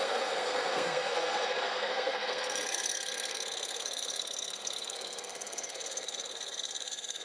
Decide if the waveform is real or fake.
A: fake